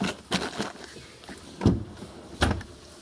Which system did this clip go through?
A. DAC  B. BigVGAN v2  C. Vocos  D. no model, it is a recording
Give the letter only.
D